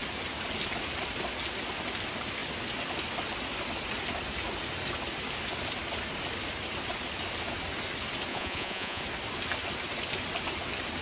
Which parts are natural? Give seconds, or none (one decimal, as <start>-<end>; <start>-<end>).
0.0-8.3; 9.0-11.0

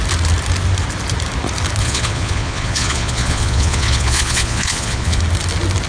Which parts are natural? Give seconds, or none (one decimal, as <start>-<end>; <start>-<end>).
0.0-1.8; 5.2-5.9

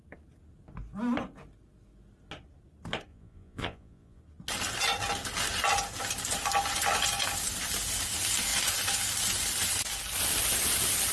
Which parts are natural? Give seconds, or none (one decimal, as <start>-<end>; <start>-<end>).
0.0-3.1; 4.2-11.1

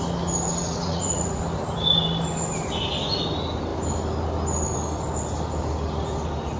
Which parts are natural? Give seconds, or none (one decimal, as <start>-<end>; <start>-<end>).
0.0-0.6; 1.4-6.6

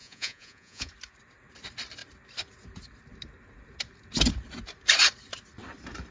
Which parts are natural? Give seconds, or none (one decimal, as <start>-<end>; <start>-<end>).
0.9-6.1